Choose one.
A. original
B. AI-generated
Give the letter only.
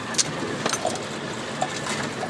A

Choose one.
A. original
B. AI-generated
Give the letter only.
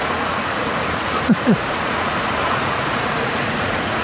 B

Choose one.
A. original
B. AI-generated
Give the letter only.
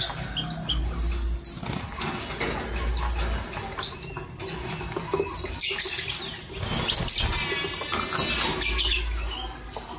A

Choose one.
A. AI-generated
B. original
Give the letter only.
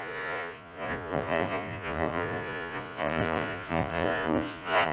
A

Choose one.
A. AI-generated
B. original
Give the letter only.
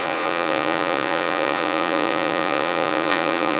A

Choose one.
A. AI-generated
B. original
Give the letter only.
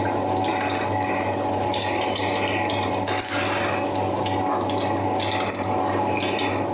B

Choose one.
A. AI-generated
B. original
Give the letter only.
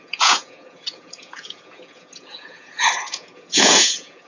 A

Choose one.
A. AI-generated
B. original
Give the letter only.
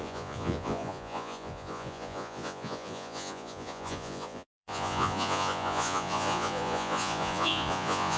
A